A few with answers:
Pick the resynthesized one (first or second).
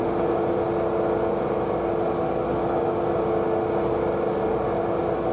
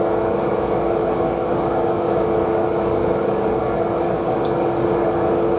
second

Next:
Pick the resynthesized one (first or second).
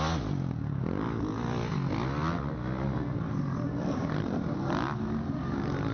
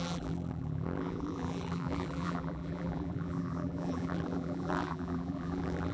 second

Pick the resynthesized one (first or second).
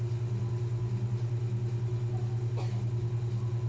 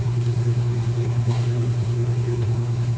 second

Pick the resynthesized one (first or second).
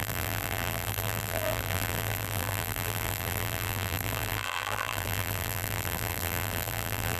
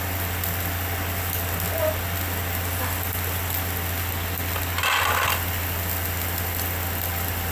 first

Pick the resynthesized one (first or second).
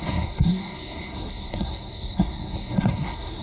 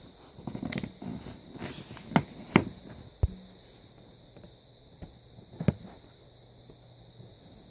first